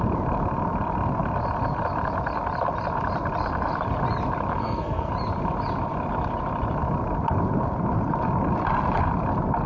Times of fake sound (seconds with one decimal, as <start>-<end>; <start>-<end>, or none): 4.6-5.1